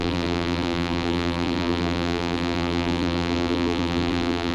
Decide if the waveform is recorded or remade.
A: remade